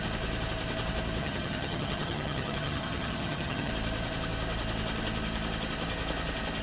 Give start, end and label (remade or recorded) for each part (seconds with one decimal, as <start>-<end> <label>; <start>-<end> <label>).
0.0-1.2 recorded; 1.2-3.7 remade; 3.7-6.6 recorded